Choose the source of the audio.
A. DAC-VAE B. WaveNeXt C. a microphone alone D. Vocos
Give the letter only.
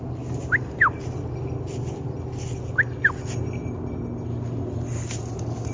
C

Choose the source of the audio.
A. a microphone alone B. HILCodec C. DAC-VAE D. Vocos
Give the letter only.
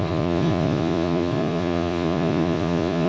D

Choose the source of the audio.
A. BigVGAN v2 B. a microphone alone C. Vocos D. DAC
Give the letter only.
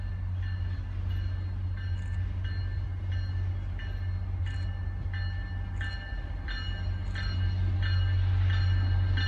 B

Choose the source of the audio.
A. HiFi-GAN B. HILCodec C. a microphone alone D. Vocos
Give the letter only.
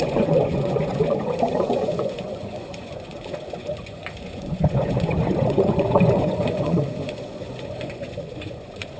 D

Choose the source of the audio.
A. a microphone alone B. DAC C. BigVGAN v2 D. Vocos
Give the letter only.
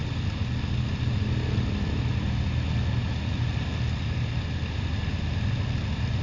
A